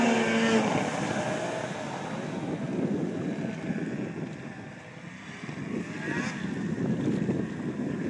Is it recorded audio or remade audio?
recorded